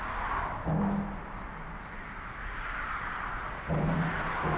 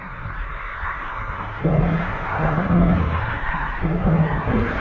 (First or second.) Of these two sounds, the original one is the first